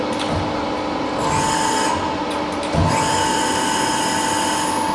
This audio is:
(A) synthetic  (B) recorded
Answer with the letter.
B